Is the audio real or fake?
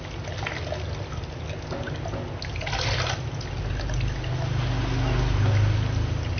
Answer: real